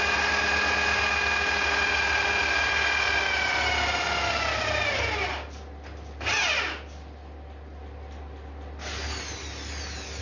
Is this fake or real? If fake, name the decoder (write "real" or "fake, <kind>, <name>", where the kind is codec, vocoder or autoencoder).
real